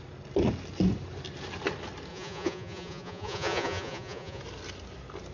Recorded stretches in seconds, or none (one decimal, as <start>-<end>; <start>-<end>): 0.0-2.1; 4.4-5.3